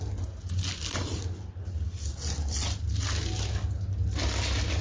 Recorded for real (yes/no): yes